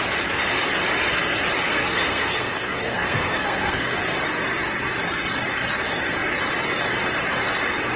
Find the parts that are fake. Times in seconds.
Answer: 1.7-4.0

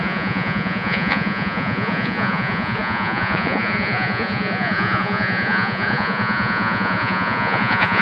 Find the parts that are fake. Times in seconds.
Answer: 0.0-8.0

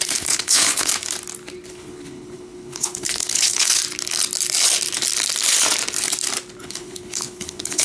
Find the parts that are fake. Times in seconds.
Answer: 0.0-0.9; 1.7-3.8; 6.6-7.8

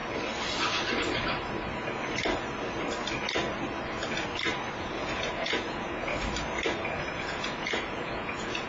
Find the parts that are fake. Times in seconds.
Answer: 4.8-6.1; 6.8-8.7

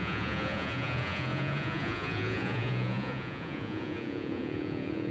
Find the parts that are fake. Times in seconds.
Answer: 0.0-5.1

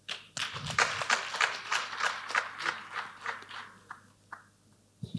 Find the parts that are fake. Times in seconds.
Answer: none

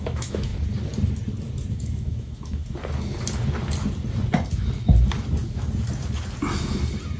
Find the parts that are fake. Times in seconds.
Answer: 0.0-0.5; 1.7-2.6